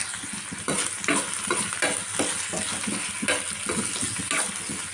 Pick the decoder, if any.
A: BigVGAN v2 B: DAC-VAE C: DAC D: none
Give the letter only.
D